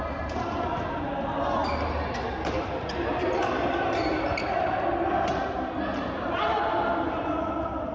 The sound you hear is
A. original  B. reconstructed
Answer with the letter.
A